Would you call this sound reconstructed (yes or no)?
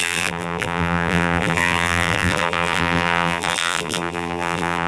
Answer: yes